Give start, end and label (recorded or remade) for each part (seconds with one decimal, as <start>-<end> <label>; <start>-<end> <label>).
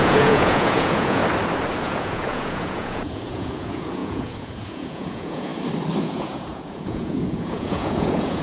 0.0-1.2 remade; 1.2-1.8 recorded; 1.8-5.5 remade; 5.5-6.0 recorded; 6.0-8.4 remade